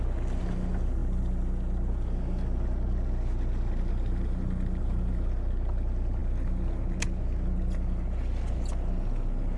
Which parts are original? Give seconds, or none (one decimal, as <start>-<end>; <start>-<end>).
0.0-9.6